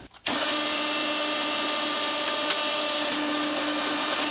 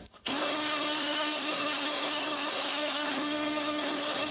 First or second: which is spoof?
second